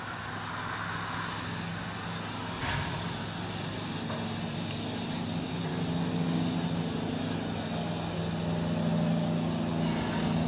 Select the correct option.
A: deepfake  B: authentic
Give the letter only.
B